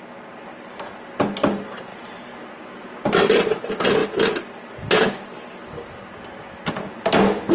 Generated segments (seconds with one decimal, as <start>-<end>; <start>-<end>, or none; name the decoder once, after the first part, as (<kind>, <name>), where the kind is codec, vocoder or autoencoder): none